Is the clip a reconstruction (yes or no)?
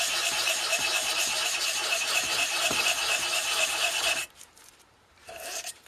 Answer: yes